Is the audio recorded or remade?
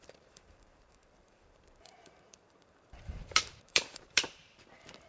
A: remade